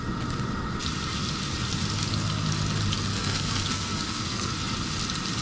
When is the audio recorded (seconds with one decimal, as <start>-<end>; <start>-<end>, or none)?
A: 0.0-3.1; 4.5-5.4